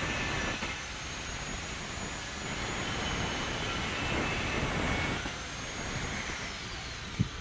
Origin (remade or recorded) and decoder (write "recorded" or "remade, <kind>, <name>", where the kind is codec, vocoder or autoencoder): recorded